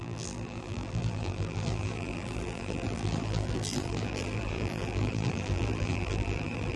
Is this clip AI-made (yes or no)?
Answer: yes